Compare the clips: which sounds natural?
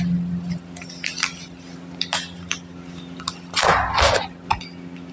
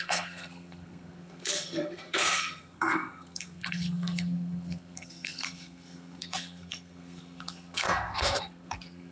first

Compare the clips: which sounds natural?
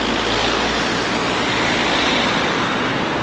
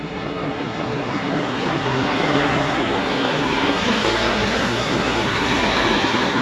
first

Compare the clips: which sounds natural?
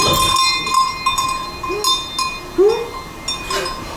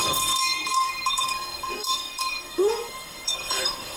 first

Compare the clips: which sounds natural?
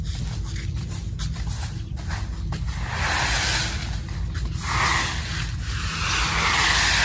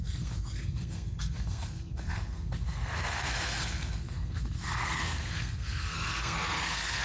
first